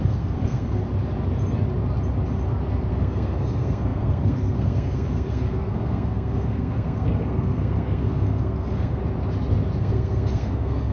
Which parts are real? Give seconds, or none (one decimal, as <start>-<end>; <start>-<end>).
0.8-2.9; 9.0-9.8